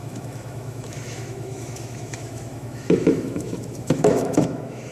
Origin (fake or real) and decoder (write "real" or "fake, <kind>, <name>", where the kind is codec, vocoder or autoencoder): fake, autoencoder, DAC-VAE